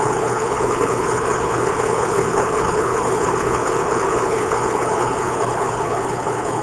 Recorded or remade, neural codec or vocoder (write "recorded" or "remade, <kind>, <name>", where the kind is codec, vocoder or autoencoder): remade, codec, HILCodec